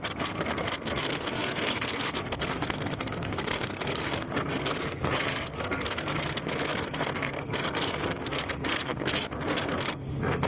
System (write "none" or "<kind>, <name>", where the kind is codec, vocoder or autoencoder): codec, SNAC